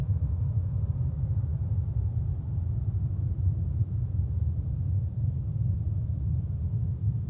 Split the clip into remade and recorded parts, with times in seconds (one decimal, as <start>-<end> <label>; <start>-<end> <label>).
0.0-0.8 remade; 0.8-7.3 recorded